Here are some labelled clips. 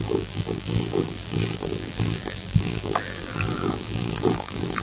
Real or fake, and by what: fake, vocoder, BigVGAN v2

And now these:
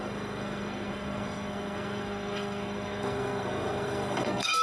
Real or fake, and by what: fake, codec, SNAC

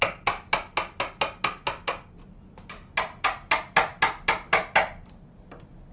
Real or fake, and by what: real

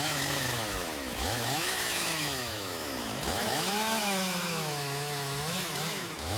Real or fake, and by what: fake, autoencoder, DAC-VAE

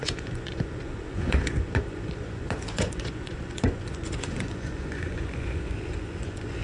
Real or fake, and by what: fake, vocoder, Vocos